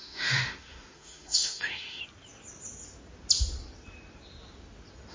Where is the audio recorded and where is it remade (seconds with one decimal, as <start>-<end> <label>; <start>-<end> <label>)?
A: 0.0-2.0 remade; 2.0-5.1 recorded